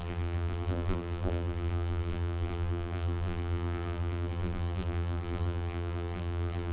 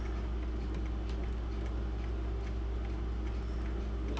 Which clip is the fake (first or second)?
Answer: first